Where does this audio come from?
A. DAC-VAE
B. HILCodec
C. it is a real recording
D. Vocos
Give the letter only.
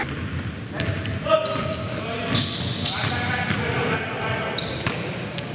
C